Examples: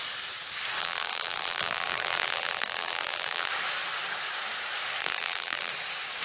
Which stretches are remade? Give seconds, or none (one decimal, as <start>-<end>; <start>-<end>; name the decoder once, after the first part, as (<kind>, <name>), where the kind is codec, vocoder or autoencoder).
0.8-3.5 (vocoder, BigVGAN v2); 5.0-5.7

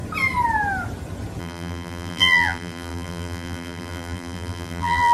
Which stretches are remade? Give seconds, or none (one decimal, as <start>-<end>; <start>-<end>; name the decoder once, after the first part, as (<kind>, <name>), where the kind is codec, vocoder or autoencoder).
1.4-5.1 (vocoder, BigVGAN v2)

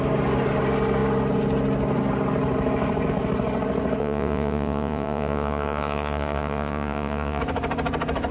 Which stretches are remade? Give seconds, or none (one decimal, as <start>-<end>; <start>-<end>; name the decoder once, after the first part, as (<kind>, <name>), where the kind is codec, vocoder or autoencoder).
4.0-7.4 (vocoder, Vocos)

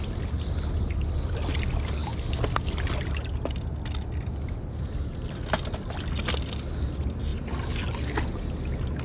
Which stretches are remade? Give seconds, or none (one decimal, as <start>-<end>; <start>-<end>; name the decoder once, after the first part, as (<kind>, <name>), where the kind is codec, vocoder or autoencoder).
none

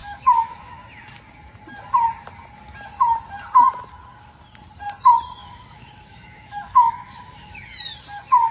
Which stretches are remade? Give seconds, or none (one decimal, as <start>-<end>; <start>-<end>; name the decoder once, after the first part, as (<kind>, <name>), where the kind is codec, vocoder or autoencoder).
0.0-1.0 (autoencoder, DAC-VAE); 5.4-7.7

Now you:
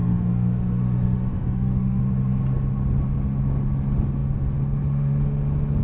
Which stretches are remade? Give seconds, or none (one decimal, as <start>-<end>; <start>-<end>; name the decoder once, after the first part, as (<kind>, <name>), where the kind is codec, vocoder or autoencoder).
0.0-2.0 (autoencoder, DAC-VAE)

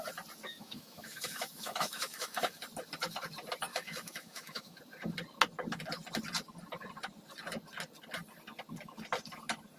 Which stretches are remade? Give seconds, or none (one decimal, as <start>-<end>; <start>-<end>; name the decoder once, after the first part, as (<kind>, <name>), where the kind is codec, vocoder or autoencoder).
0.5-2.6 (autoencoder, DAC-VAE); 3.7-4.8